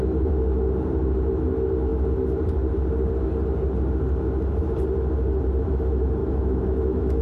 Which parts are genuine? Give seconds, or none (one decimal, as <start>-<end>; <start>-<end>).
0.0-6.2